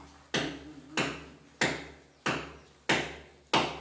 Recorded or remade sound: recorded